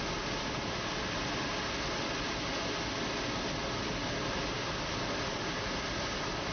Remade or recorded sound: recorded